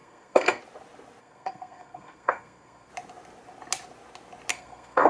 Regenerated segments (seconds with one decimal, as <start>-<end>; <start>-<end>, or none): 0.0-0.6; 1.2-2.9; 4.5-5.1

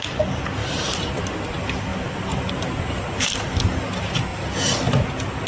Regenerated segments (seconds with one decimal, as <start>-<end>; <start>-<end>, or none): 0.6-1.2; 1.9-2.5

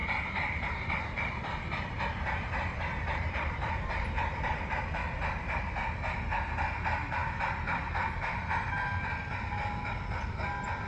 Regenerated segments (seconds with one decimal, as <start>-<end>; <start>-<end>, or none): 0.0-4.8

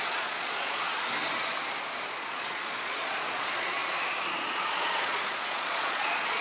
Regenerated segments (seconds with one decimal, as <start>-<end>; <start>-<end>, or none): 0.0-0.9; 2.1-3.8; 4.3-6.4